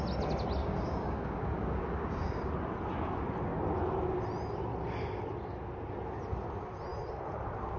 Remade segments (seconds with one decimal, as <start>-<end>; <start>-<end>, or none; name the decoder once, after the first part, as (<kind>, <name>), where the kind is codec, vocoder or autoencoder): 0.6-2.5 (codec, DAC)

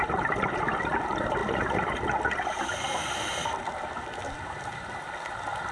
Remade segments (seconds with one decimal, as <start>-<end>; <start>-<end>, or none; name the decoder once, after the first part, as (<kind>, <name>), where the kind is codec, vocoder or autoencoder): none

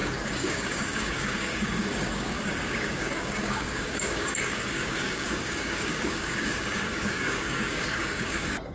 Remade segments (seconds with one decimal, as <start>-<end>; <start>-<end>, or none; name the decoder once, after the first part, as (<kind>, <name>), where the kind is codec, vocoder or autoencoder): 0.0-8.7 (codec, DAC)